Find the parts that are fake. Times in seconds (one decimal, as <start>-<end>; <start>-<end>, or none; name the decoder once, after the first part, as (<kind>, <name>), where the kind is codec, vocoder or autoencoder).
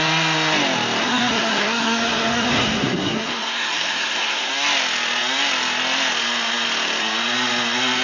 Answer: 1.0-4.5 (codec, SNAC)